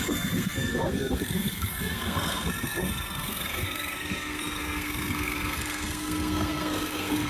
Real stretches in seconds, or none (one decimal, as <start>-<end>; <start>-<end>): none